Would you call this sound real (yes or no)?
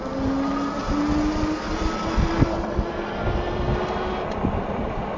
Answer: yes